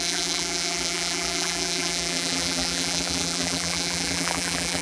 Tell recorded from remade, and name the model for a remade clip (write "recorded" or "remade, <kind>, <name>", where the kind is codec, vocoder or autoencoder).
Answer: remade, vocoder, BigVGAN v2